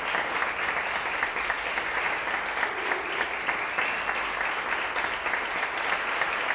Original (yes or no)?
yes